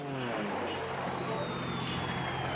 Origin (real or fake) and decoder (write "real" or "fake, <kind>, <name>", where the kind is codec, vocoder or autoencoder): real